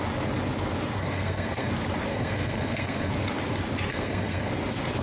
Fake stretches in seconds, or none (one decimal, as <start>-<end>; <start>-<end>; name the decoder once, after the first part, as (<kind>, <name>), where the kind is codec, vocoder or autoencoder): 1.0-1.7 (codec, SNAC); 2.1-3.1; 3.9-4.5